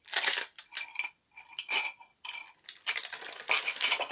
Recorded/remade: recorded